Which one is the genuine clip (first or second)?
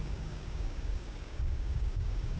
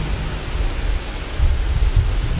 second